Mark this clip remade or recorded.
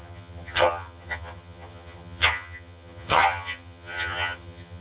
remade